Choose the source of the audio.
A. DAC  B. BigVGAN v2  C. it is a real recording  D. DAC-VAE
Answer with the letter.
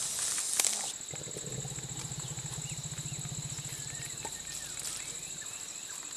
C